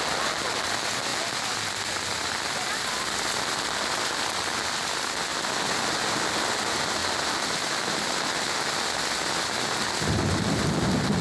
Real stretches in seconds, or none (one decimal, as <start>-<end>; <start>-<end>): 0.0-11.2